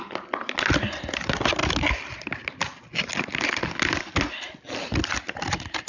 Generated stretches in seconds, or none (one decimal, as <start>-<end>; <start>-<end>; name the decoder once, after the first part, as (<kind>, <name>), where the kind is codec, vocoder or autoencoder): none